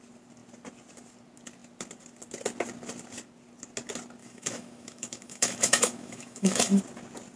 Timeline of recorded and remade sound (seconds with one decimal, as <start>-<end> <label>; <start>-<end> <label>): 0.0-4.2 recorded; 4.2-6.8 remade; 6.8-7.4 recorded